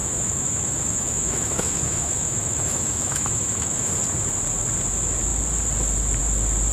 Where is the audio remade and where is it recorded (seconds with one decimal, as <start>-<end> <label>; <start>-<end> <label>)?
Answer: 0.0-3.9 remade; 3.9-6.7 recorded